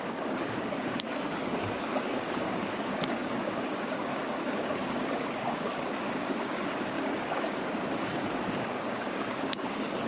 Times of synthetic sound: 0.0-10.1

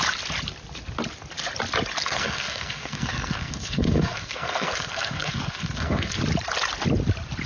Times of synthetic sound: 2.0-6.2

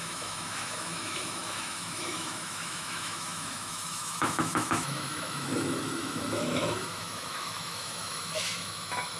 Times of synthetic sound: 0.0-9.2

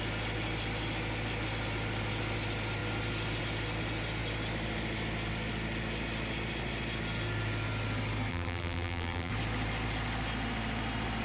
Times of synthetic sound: 8.3-9.3

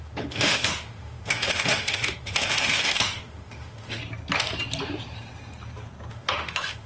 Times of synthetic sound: 0.0-4.0; 6.1-6.9

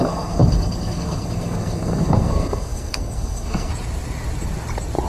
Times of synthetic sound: 0.0-3.7